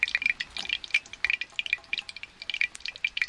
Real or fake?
real